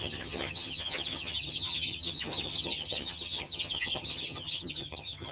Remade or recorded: remade